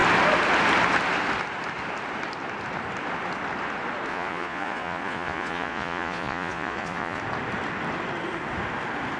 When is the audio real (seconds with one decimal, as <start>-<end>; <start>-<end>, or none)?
0.0-4.1; 7.2-9.2